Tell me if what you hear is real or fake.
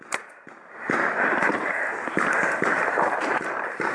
fake